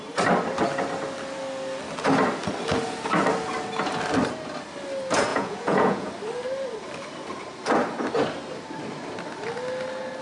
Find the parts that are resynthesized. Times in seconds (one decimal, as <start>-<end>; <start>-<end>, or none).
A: 5.3-6.1

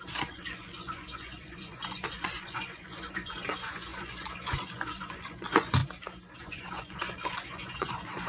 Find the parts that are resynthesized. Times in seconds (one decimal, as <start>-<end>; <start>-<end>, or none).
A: 0.0-5.8; 6.4-8.3

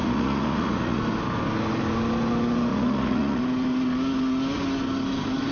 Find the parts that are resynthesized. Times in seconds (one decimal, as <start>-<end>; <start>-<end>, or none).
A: 0.0-1.0; 2.7-3.4

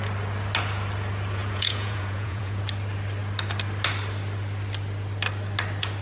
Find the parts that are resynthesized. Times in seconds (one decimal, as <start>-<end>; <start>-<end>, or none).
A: 1.4-2.6

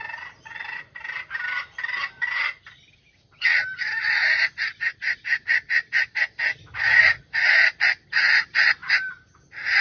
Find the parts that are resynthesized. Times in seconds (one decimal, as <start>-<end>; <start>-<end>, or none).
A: none

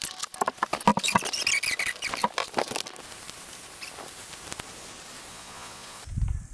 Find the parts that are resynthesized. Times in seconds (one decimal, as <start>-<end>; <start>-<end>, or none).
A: 5.3-6.0